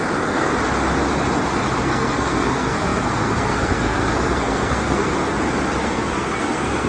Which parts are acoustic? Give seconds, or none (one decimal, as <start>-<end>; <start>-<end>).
0.5-1.8; 5.1-5.8